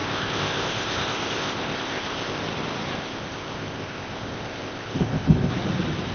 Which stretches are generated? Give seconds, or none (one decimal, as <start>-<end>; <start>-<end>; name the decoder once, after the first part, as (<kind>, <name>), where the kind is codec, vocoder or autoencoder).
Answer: 0.0-2.4 (codec, ZipCodec); 3.0-5.5